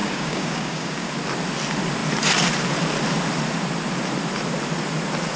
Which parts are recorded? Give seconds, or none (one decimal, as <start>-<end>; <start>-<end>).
1.1-5.4